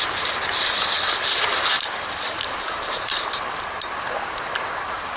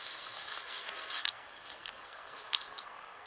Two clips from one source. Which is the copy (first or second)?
second